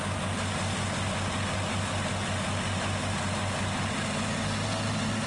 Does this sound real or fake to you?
real